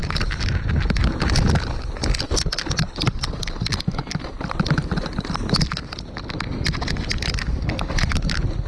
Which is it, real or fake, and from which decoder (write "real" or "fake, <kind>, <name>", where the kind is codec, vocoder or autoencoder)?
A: real